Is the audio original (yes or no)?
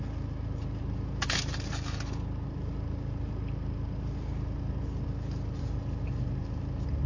yes